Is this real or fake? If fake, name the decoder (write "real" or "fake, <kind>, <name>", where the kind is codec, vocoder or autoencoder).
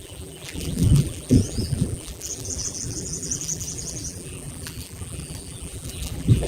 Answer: fake, vocoder, BigVGAN v2